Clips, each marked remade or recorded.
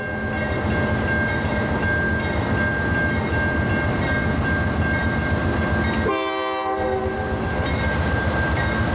recorded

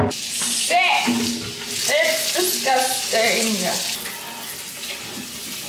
recorded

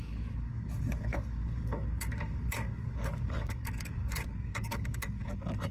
remade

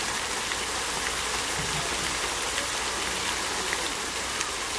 recorded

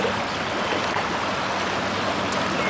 recorded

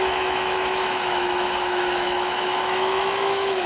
remade